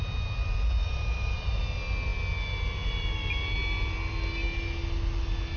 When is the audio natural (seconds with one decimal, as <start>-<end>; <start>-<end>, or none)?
0.0-0.8; 1.6-5.6